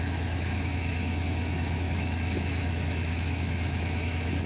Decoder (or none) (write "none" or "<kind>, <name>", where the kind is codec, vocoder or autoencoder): autoencoder, DAC-VAE